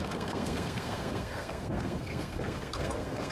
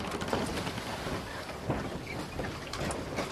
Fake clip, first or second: first